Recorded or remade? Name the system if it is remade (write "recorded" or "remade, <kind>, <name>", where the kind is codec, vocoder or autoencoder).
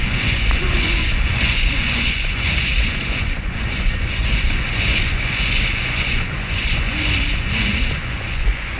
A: remade, vocoder, Vocos